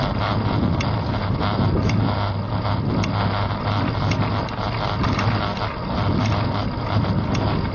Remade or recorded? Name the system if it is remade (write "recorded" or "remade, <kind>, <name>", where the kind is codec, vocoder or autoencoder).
recorded